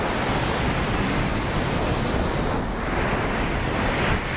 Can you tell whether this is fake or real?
real